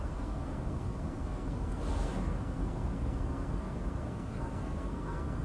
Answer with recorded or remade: remade